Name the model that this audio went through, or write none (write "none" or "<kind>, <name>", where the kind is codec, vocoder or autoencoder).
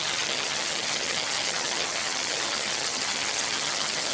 vocoder, HiFi-GAN